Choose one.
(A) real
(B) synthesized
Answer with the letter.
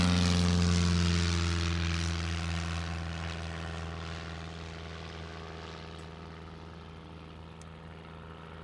A